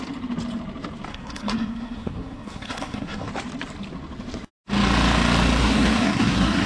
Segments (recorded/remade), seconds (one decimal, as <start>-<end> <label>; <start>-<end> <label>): 0.0-1.1 recorded; 1.1-3.3 remade; 3.3-5.6 recorded; 5.6-6.7 remade

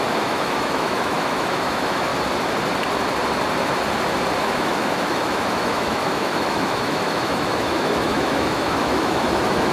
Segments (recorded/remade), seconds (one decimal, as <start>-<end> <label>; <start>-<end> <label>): 0.0-2.1 remade; 2.1-4.4 recorded; 4.4-9.7 remade

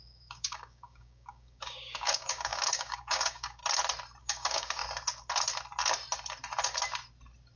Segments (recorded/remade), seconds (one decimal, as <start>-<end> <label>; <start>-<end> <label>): 0.0-3.6 remade; 3.6-4.2 recorded; 4.2-4.8 remade; 4.8-7.6 recorded